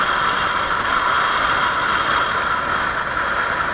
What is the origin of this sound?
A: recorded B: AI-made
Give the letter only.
A